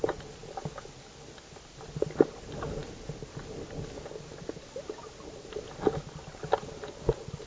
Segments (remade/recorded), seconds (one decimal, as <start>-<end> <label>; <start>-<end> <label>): 0.0-7.5 recorded